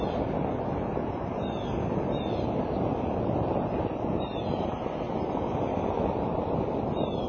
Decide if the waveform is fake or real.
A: real